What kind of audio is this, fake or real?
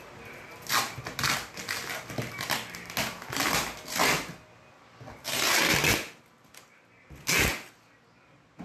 real